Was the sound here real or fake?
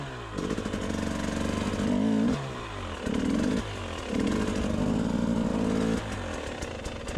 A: real